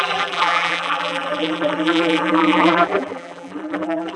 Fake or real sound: fake